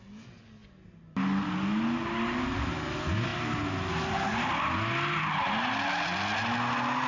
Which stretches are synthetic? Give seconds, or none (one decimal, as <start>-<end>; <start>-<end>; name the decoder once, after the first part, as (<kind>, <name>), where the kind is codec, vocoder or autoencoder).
none